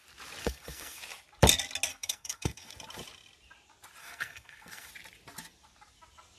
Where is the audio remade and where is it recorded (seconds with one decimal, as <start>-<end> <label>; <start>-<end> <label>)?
0.0-0.4 recorded; 0.4-1.0 remade; 1.0-1.9 recorded; 1.9-2.7 remade; 2.7-4.0 recorded; 4.0-4.9 remade; 4.9-6.4 recorded